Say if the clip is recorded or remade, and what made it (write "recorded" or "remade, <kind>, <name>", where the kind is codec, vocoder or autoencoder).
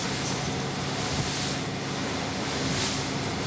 recorded